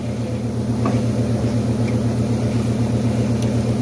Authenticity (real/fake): real